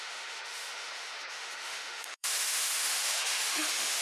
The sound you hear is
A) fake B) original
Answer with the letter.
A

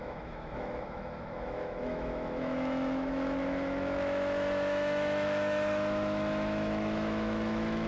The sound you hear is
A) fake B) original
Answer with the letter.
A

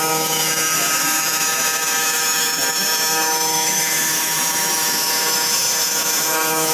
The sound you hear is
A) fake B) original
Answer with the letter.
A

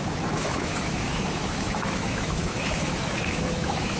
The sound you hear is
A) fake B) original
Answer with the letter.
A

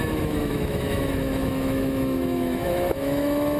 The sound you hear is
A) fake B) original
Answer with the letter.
A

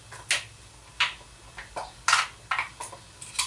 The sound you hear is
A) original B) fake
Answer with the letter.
A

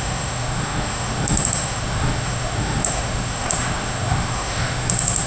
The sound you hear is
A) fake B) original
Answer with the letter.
A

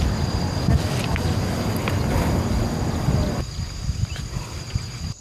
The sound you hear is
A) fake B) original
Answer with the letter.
B